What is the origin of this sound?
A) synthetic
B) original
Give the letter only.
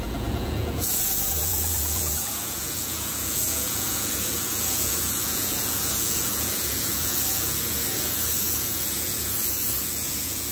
A